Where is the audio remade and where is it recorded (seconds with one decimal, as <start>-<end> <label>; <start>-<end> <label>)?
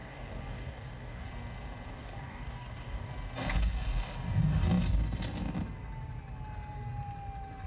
0.0-1.3 remade; 1.3-1.9 recorded; 1.9-3.1 remade; 3.1-7.7 recorded